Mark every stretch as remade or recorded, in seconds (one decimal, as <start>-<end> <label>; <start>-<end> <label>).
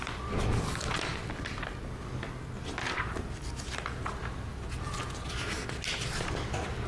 0.0-6.9 recorded